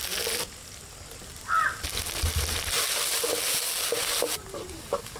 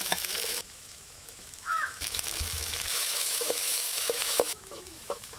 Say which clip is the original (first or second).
first